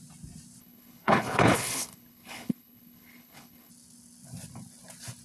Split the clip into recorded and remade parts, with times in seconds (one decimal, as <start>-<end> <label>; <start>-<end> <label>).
0.0-0.6 recorded; 0.6-3.7 remade; 3.7-5.2 recorded